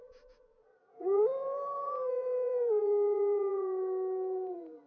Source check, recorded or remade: remade